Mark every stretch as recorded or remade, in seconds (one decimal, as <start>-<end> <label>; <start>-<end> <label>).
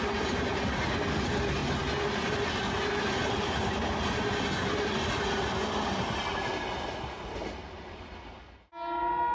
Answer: 0.0-9.3 recorded